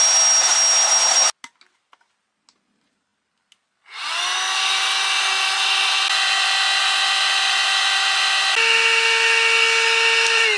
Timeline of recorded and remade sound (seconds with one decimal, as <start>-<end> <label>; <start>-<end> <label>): 0.0-10.6 recorded